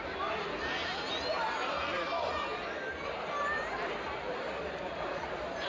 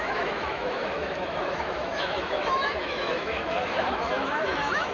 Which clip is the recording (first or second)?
first